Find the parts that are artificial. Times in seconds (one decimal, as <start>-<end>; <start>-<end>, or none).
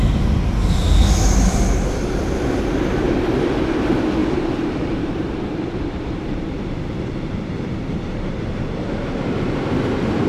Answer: 4.2-8.9